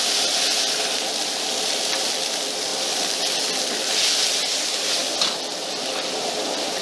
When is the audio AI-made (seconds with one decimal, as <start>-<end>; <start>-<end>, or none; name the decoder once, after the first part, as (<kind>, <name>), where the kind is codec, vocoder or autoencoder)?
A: none